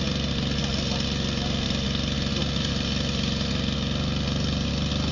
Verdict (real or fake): real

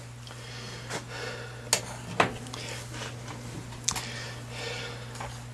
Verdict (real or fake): real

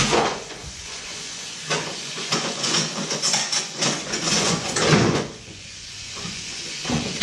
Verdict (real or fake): fake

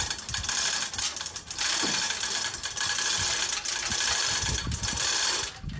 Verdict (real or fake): real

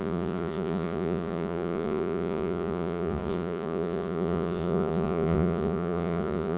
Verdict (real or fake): fake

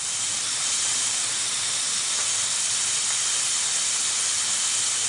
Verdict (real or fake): real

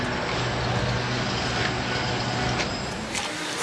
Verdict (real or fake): real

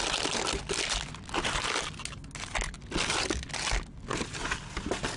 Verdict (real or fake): real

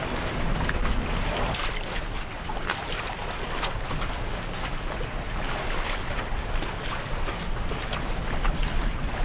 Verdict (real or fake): real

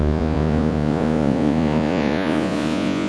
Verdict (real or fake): fake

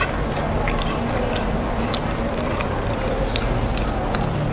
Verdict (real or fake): real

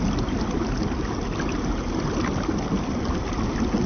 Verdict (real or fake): real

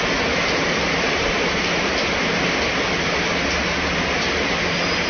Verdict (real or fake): real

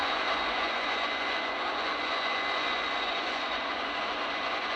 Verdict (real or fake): fake